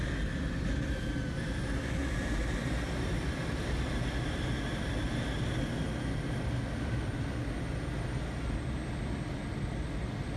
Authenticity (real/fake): real